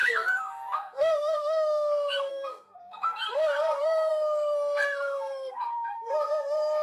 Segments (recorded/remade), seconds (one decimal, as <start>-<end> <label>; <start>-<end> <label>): 0.0-6.8 remade